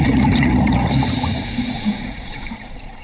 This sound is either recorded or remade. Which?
remade